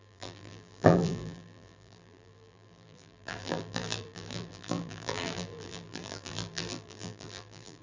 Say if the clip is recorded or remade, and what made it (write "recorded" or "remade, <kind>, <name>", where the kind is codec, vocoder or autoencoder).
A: remade, vocoder, BigVGAN v2